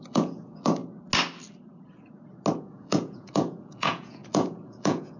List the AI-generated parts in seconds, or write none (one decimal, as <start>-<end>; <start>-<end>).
0.0-0.8; 2.6-5.2